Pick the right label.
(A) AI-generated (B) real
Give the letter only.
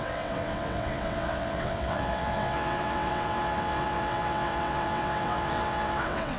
A